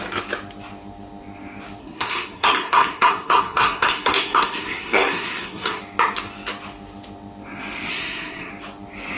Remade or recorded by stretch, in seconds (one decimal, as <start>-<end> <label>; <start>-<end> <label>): 0.0-1.8 recorded; 1.8-5.8 remade; 5.8-7.9 recorded; 7.9-8.5 remade; 8.5-9.2 recorded